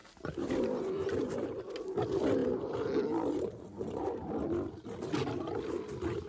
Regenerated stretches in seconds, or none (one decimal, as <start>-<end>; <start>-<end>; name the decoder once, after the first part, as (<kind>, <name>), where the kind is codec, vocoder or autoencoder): none